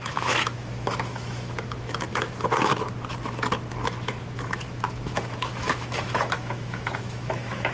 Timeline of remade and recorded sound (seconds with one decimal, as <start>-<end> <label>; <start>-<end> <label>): 0.0-2.7 remade; 2.7-3.7 recorded; 3.7-7.7 remade